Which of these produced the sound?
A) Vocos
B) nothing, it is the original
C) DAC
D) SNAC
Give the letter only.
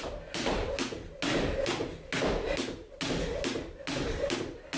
B